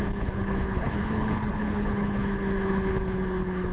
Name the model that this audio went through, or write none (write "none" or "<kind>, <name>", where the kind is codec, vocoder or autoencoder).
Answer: codec, HILCodec